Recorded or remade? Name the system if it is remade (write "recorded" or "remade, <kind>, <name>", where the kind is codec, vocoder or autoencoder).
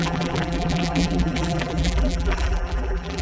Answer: remade, vocoder, BigVGAN v2